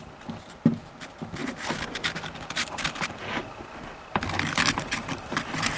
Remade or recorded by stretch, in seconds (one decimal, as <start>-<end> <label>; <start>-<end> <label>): 0.0-5.8 recorded